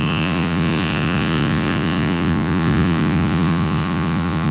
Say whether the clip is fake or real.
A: fake